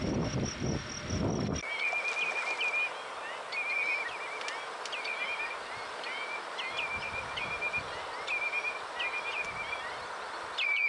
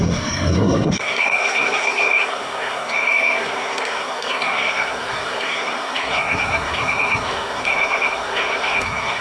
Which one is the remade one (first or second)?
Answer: second